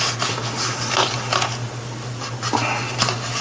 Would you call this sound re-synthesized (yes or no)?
no